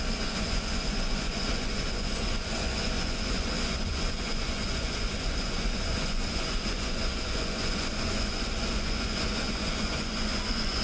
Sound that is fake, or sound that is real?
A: fake